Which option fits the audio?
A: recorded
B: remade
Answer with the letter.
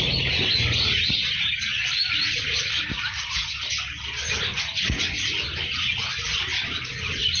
A